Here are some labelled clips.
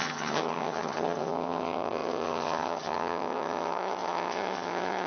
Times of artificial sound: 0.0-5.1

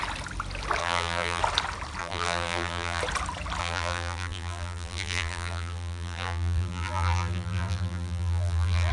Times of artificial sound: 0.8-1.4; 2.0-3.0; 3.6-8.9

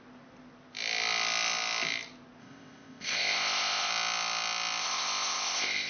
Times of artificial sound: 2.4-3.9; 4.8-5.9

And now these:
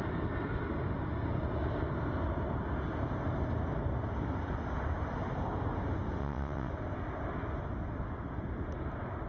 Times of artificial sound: 6.2-6.7